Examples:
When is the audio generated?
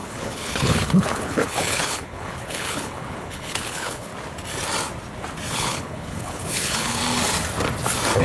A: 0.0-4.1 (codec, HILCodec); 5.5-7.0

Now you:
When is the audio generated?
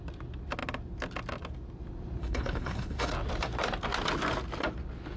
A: 2.2-3.1 (codec, HILCodec)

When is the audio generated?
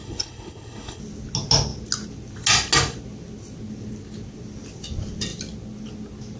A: 0.0-1.0 (codec, HILCodec)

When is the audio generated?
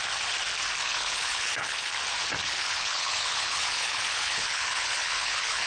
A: 0.8-1.9 (codec, HILCodec); 2.4-5.7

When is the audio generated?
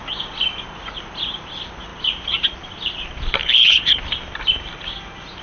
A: 3.4-4.0 (codec, HILCodec)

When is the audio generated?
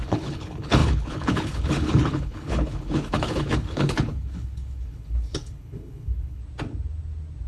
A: 0.0-6.4 (codec, HILCodec)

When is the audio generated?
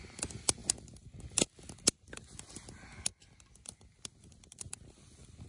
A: none